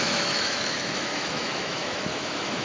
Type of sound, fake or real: fake